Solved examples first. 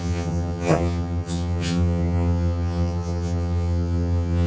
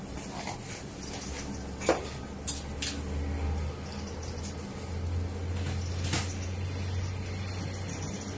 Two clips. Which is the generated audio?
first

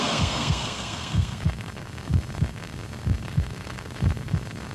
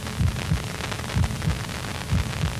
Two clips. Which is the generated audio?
first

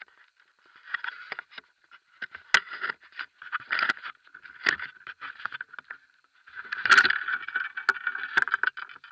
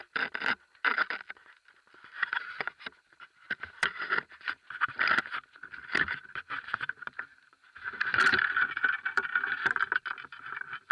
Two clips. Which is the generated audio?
second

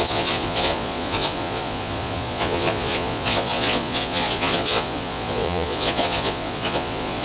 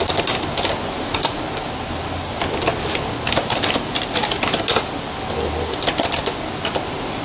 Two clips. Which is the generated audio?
first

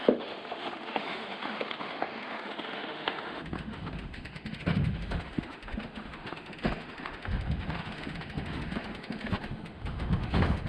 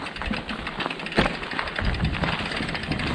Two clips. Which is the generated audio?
first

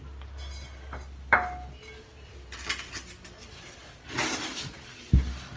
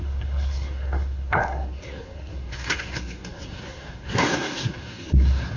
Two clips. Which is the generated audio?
second